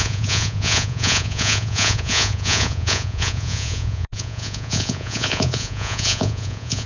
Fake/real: fake